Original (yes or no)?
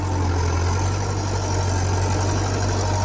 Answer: yes